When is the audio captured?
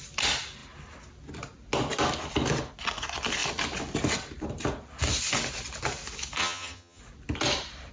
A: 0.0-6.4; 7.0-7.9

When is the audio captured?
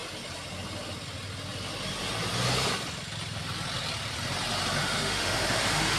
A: 0.0-4.8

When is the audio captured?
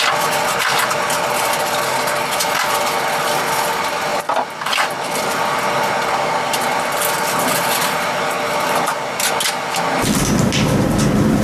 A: 0.0-11.4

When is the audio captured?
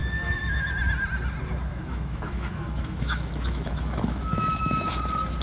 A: 0.7-1.7; 4.9-5.4